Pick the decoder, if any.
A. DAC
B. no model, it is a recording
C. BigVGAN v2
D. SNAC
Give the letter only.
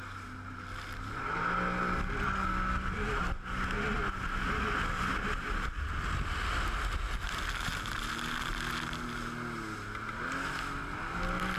B